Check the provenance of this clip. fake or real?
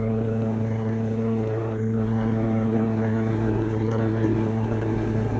fake